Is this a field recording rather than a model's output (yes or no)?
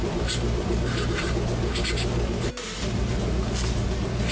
yes